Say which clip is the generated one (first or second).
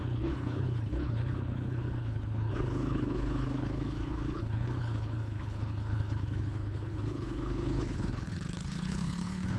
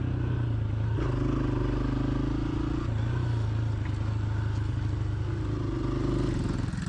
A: first